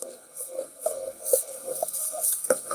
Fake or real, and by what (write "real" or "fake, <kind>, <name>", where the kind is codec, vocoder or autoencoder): fake, codec, SNAC